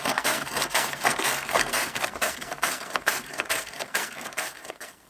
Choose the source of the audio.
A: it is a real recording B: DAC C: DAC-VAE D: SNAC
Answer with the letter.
D